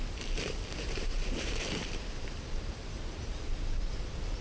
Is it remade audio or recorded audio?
remade